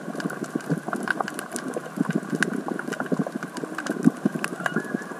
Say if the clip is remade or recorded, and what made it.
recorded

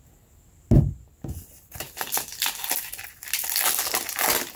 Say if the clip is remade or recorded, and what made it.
recorded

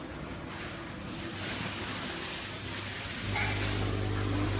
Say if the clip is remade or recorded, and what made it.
recorded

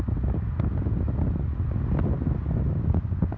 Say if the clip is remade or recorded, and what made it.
recorded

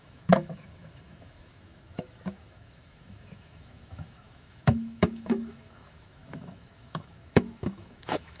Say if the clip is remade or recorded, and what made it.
remade, autoencoder, DAC-VAE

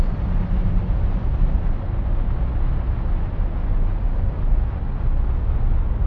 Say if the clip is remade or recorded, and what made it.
recorded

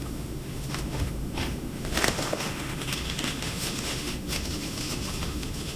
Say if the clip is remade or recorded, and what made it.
remade, autoencoder, DAC-VAE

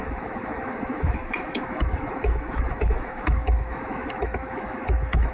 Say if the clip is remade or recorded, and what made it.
remade, autoencoder, DAC-VAE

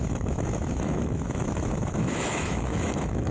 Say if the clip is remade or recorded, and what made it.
remade, autoencoder, DAC-VAE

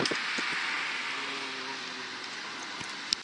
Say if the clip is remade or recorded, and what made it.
recorded